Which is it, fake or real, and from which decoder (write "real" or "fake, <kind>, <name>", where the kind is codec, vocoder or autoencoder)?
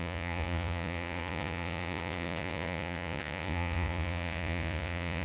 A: fake, vocoder, Vocos